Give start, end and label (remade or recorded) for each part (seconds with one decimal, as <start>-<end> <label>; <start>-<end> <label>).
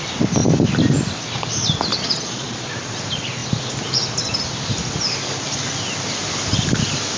0.0-1.9 recorded; 1.9-2.7 remade; 2.7-7.2 recorded